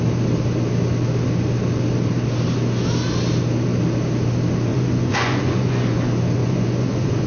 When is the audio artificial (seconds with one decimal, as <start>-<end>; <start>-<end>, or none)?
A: 4.7-6.0; 6.4-7.3